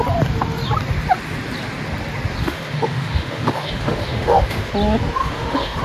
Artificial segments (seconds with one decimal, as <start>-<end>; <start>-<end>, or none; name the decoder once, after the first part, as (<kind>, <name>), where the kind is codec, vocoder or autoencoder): 2.4-4.7 (autoencoder, DAC-VAE); 5.2-5.8